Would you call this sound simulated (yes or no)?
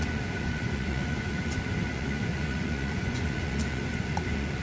yes